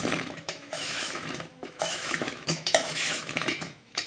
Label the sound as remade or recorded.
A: remade